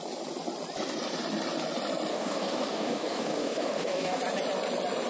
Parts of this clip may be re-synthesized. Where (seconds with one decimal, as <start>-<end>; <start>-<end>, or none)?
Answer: 2.1-4.2